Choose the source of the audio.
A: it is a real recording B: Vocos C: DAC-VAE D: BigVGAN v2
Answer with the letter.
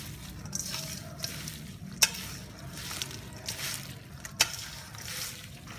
A